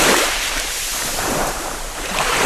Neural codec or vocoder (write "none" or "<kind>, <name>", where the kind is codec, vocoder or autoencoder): vocoder, BigVGAN v2